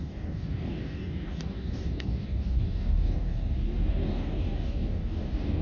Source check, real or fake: fake